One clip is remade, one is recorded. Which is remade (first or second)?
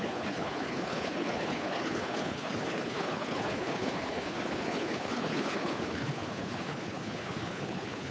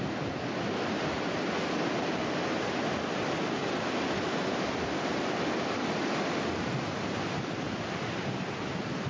first